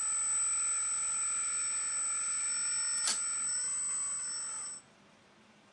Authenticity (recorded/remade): recorded